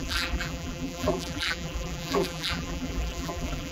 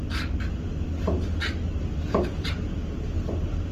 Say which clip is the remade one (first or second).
first